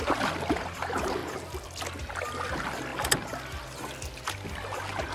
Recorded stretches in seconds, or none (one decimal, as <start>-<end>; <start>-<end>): 0.0-5.1